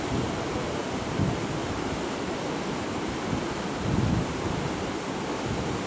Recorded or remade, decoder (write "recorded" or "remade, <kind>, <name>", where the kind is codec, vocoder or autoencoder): recorded